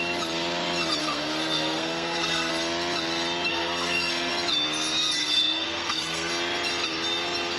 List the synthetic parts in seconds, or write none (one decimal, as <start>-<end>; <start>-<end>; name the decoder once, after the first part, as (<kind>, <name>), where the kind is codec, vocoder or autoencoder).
1.0-2.5 (codec, SNAC); 3.5-4.3; 5.2-6.3